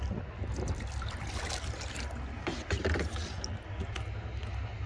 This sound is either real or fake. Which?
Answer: real